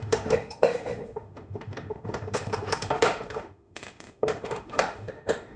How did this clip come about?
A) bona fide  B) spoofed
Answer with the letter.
B